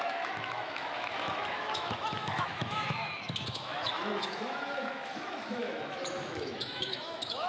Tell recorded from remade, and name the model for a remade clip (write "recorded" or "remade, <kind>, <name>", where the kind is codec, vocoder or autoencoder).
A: remade, autoencoder, DAC-VAE